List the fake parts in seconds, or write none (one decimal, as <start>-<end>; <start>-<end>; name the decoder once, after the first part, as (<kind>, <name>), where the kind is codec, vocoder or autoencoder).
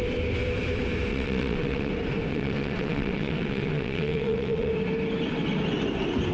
1.1-1.9 (vocoder, WaveNeXt); 2.3-4.7